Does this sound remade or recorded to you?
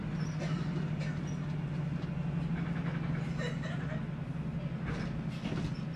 recorded